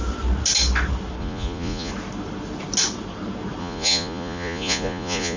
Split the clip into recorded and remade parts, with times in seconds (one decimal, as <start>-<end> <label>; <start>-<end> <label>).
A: 0.0-1.2 recorded; 1.2-1.9 remade; 1.9-3.6 recorded; 3.6-5.4 remade

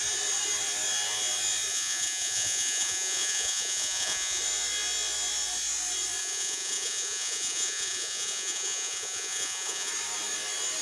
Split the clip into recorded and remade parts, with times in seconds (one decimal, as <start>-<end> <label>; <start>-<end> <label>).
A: 0.0-1.7 recorded; 1.7-4.4 remade; 4.4-6.2 recorded; 6.2-9.9 remade; 9.9-10.8 recorded

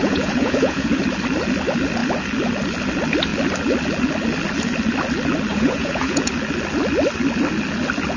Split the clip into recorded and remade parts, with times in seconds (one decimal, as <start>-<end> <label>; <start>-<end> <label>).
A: 0.0-1.0 remade; 1.0-5.5 recorded; 5.5-6.3 remade; 6.3-8.2 recorded

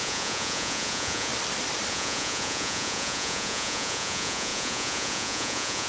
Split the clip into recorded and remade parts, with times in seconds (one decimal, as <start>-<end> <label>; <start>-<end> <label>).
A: 0.0-1.3 remade; 1.3-1.9 recorded; 1.9-5.9 remade

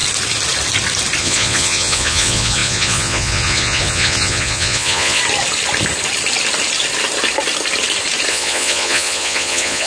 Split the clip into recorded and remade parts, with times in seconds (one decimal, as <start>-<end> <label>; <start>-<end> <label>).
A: 0.0-1.2 recorded; 1.2-5.2 remade; 5.2-8.3 recorded; 8.3-9.9 remade

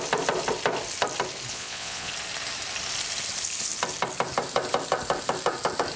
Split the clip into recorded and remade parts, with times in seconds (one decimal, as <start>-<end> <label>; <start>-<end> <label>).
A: 0.0-1.5 recorded; 1.5-2.1 remade; 2.1-6.0 recorded

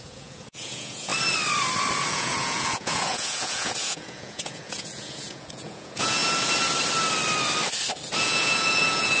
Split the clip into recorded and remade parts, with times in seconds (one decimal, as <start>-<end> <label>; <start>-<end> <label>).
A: 0.0-1.1 remade; 1.1-2.1 recorded; 2.1-6.2 remade; 6.2-8.2 recorded; 8.2-9.2 remade